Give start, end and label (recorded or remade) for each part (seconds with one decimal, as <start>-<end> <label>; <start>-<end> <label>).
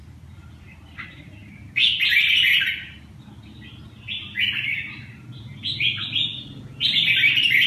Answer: 0.0-7.7 recorded